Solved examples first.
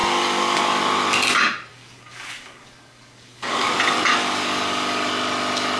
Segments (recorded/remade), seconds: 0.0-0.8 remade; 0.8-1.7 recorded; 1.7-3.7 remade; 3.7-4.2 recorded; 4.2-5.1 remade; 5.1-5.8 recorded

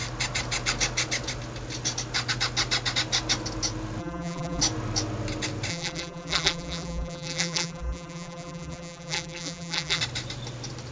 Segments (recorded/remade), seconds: 0.0-4.0 recorded; 4.0-4.6 remade; 4.6-5.7 recorded; 5.7-10.0 remade; 10.0-10.9 recorded

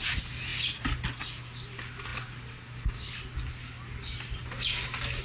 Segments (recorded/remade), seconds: 0.0-5.2 recorded

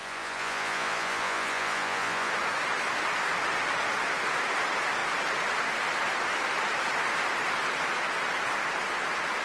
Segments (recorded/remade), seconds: 0.0-2.3 remade; 2.3-9.4 recorded

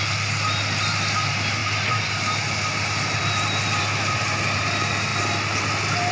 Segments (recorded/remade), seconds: 0.0-6.1 recorded

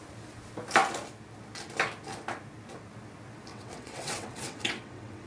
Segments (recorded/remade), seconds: 0.0-3.5 recorded; 3.5-5.3 remade